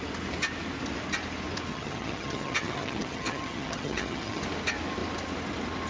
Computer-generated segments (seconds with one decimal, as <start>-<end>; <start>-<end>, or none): 1.7-4.4